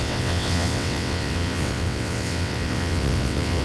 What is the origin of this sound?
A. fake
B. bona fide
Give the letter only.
A